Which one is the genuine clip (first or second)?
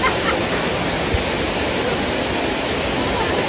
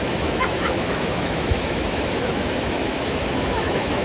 first